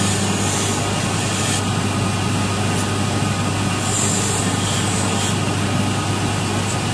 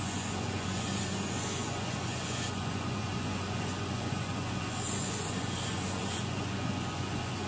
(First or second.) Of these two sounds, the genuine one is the first